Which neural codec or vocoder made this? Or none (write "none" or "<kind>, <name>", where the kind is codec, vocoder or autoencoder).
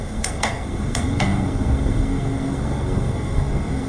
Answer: codec, SNAC